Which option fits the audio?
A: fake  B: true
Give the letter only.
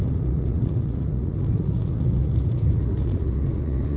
A